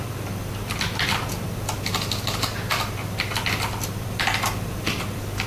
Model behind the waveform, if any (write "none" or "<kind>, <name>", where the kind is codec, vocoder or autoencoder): none